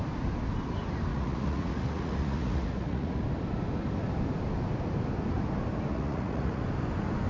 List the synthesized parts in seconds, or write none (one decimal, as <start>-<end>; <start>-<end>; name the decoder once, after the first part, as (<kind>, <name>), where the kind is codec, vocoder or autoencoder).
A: 1.1-3.2 (vocoder, Vocos); 5.9-6.6